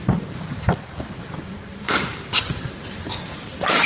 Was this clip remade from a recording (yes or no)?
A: yes